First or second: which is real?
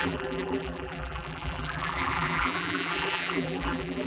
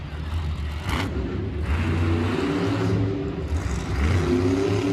second